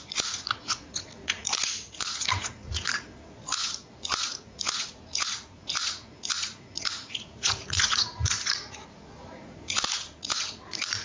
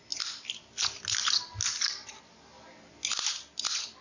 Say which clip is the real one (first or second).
second